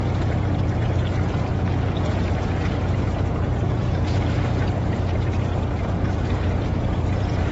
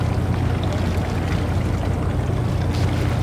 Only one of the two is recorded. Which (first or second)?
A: second